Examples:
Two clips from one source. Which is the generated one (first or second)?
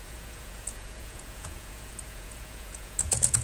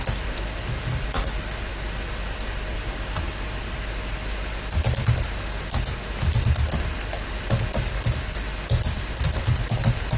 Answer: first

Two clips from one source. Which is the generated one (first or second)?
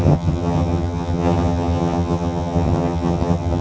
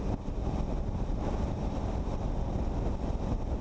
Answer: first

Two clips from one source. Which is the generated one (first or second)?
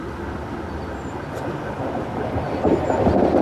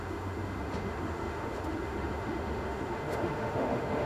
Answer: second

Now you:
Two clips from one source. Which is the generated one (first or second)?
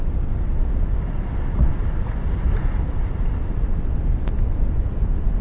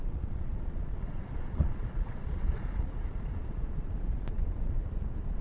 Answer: second